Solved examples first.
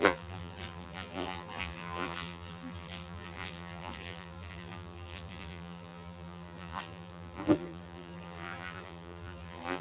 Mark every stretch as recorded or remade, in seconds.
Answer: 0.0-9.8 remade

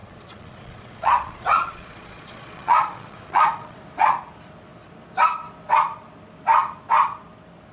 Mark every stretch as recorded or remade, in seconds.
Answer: 0.0-3.8 remade; 3.8-7.7 recorded

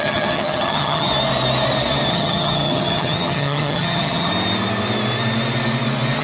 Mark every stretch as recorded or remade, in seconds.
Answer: 0.0-1.1 remade; 1.1-2.1 recorded; 2.1-4.3 remade; 4.3-6.2 recorded

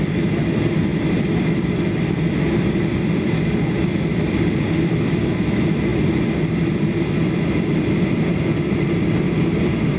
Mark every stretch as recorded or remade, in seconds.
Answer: 0.0-10.0 recorded

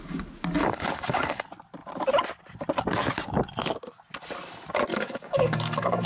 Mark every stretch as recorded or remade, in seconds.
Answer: 0.0-0.6 recorded; 0.6-1.4 remade; 1.4-4.9 recorded; 4.9-6.1 remade

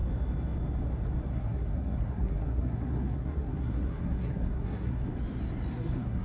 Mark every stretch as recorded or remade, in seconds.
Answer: 0.0-1.3 recorded; 1.3-5.1 remade; 5.1-5.7 recorded; 5.7-6.2 remade

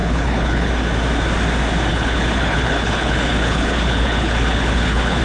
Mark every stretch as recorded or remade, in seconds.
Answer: 0.0-0.7 remade; 0.7-1.9 recorded; 1.9-5.2 remade